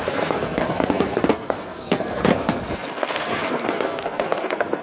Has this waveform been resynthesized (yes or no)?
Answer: yes